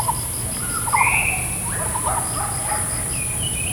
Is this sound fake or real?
real